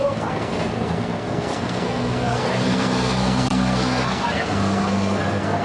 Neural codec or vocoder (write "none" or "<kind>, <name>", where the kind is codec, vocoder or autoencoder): codec, SNAC